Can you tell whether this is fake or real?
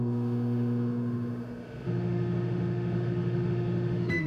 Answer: fake